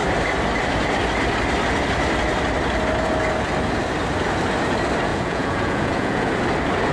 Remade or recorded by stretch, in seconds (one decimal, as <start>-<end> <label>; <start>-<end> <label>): 0.0-5.1 recorded; 5.1-6.3 remade; 6.3-6.9 recorded